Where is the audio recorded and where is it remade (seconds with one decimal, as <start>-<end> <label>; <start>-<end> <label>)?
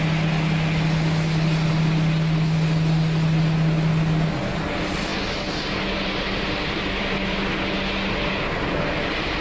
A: 0.0-9.4 recorded